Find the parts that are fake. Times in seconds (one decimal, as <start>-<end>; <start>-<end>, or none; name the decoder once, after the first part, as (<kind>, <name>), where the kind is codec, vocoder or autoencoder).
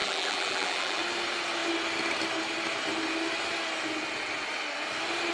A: 0.0-1.0 (vocoder, BigVGAN v2)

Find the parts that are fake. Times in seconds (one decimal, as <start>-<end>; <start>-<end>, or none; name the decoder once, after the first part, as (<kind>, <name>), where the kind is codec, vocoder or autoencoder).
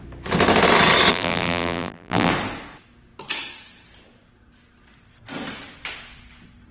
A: 1.1-2.3 (vocoder, BigVGAN v2)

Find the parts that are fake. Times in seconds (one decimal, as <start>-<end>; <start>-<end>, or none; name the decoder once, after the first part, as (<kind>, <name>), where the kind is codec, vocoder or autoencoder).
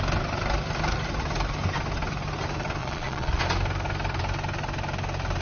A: 2.8-3.4 (vocoder, Vocos)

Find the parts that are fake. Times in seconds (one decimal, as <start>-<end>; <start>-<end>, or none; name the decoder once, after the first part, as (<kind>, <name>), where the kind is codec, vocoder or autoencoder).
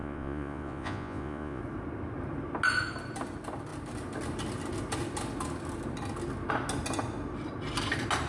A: 0.0-1.6 (vocoder, Vocos)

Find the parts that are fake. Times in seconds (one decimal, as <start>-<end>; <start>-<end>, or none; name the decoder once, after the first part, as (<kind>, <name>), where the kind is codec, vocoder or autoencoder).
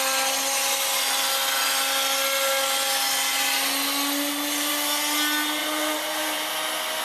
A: 5.6-6.5 (vocoder, BigVGAN v2)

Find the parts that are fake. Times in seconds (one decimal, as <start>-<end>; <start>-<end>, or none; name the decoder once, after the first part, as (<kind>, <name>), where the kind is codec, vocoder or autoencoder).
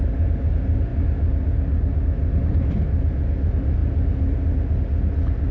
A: none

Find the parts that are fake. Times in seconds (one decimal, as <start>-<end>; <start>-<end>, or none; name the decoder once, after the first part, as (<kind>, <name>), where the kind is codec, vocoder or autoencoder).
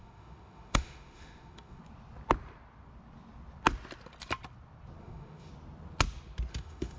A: 0.0-1.8 (autoencoder, DAC-VAE); 5.0-5.5; 6.5-7.0